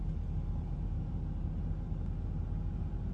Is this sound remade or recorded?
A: recorded